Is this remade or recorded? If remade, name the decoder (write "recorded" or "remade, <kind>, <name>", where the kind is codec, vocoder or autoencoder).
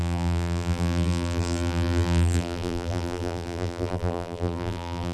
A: remade, vocoder, BigVGAN v2